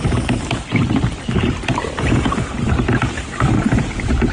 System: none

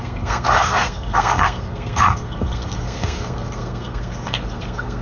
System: codec, SNAC